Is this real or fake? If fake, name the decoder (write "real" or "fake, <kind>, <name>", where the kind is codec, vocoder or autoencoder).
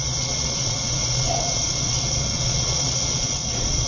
fake, vocoder, Vocos